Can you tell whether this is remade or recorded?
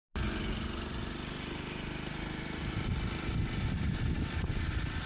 recorded